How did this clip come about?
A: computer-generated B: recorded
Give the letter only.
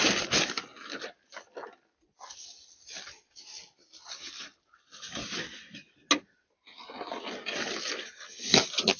B